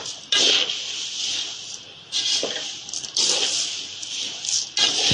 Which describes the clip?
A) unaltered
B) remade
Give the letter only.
A